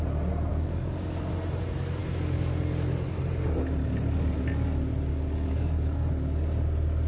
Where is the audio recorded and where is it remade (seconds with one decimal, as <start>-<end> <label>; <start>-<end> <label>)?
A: 0.0-0.5 recorded; 0.5-1.3 remade; 1.3-5.1 recorded; 5.1-6.1 remade; 6.1-7.1 recorded